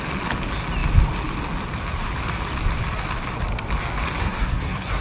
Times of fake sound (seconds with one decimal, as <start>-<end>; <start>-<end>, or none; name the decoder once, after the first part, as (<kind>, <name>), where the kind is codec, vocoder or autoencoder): 4.2-5.0 (codec, SNAC)